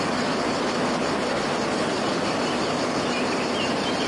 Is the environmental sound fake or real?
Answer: real